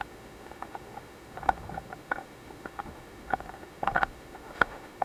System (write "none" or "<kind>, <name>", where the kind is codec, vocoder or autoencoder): autoencoder, DAC-VAE